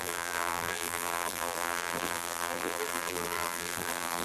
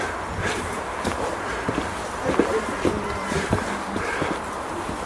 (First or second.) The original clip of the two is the second